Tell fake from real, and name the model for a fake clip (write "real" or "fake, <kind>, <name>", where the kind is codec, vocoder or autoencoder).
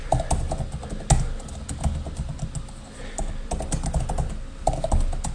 real